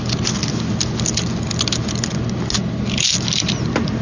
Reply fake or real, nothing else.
real